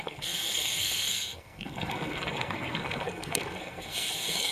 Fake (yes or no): yes